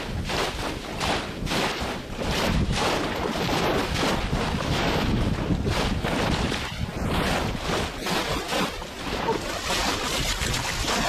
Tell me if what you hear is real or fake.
real